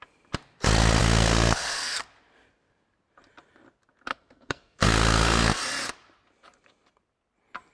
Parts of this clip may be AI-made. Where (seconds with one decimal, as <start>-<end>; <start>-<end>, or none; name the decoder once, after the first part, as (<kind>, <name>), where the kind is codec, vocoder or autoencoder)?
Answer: 1.0-2.0 (codec, SNAC); 4.1-5.6